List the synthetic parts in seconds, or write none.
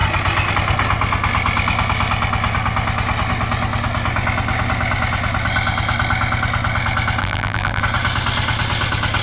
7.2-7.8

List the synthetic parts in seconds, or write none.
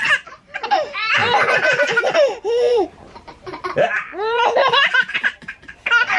1.2-2.0; 2.7-5.8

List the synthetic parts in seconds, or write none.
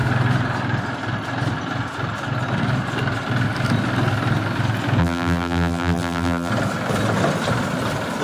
5.0-6.5